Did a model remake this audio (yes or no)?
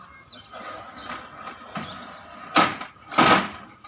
no